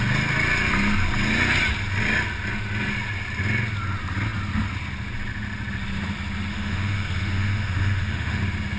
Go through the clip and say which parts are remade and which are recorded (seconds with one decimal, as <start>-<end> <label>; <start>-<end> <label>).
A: 0.0-6.5 recorded; 6.5-8.4 remade; 8.4-8.8 recorded